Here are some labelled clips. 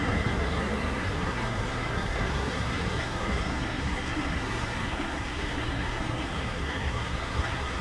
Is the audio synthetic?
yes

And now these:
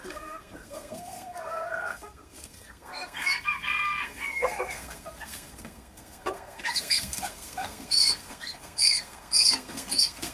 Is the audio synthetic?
yes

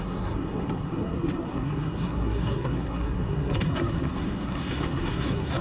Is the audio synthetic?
yes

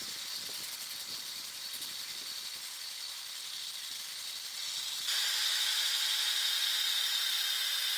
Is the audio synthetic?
no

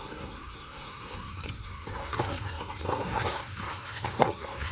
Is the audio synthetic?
yes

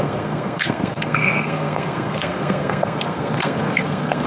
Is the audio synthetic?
yes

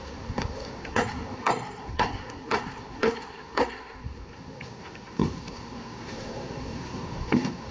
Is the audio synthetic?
yes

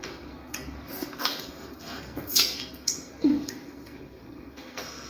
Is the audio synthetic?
yes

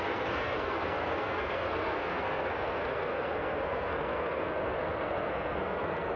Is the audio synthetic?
yes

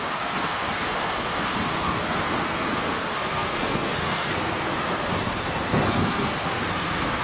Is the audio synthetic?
yes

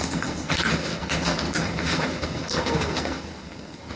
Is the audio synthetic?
yes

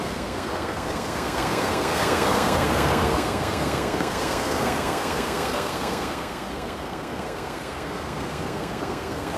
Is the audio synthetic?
yes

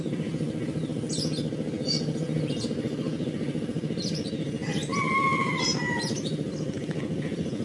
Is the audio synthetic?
no